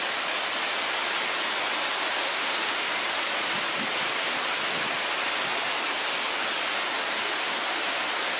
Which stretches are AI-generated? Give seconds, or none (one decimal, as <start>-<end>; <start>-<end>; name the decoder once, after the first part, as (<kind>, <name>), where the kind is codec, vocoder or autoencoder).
2.2-2.9 (autoencoder, DAC-VAE); 7.2-7.8